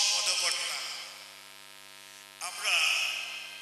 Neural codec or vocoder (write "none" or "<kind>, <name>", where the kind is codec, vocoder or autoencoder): none